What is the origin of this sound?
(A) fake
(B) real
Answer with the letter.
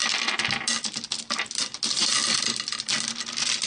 B